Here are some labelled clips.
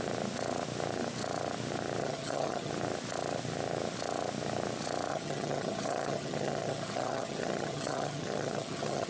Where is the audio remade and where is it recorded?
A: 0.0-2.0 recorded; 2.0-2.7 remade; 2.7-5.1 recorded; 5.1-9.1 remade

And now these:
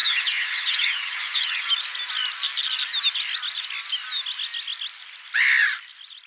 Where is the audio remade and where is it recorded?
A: 0.0-1.7 remade; 1.7-6.3 recorded